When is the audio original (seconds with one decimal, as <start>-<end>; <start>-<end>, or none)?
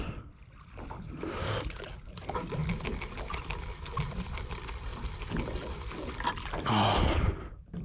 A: 0.0-7.8